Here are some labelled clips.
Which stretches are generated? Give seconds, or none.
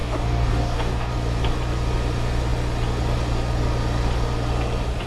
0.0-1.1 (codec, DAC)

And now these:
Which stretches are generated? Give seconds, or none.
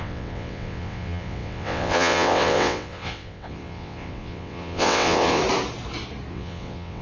0.0-5.4 (vocoder, WaveNeXt); 6.3-7.0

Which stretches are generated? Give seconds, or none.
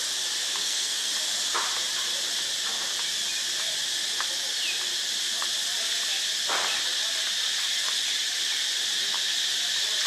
0.6-1.1 (codec, SNAC)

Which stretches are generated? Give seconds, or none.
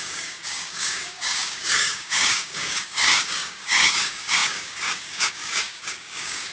0.0-6.5 (codec, DAC)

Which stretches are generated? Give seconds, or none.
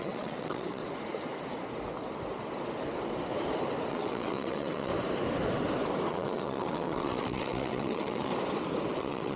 0.0-0.8 (vocoder, WaveNeXt); 3.9-4.9; 6.1-8.3; 8.9-9.4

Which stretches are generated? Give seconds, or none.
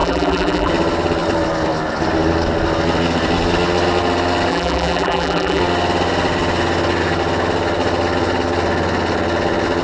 0.0-0.7 (vocoder, BigVGAN v2); 4.5-5.6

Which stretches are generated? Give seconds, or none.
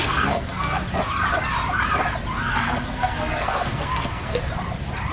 0.0-0.8 (codec, SNAC); 2.5-4.4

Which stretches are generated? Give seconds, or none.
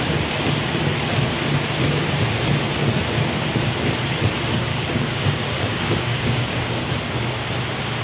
4.7-6.9 (codec, DAC)